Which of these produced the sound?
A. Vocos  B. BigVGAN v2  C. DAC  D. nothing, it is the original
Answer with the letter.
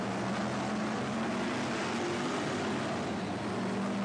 D